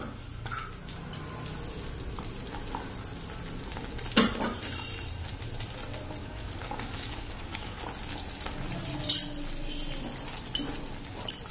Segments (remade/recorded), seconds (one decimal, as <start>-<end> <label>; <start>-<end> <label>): 0.0-6.2 recorded; 6.2-7.8 remade; 7.8-11.5 recorded